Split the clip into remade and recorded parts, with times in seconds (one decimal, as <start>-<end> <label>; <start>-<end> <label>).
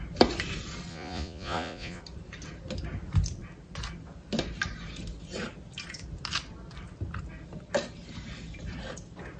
0.0-0.9 recorded; 0.9-2.0 remade; 2.0-9.4 recorded